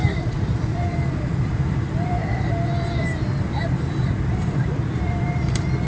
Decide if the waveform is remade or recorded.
remade